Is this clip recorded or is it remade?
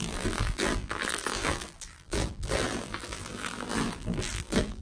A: remade